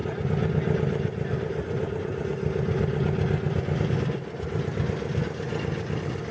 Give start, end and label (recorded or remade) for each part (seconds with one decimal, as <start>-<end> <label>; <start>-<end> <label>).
0.0-6.3 recorded